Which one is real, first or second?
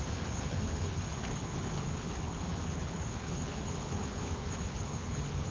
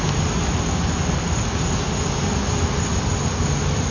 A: second